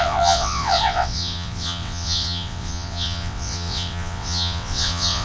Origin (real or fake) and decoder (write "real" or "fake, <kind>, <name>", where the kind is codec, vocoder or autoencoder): fake, vocoder, WaveNeXt